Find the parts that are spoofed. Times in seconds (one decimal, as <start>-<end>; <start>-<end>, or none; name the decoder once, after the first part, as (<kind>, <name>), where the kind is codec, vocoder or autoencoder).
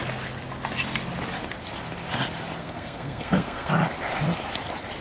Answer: 2.6-3.7 (codec, SNAC)